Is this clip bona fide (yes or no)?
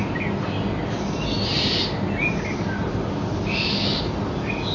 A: yes